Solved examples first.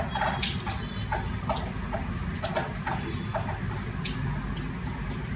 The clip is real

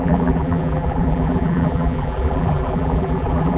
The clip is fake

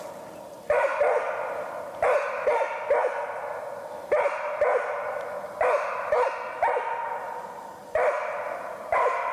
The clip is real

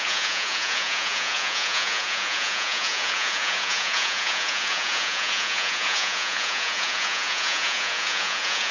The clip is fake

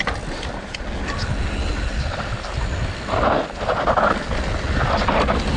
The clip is real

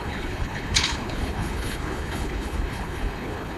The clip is fake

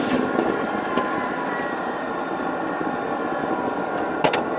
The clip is real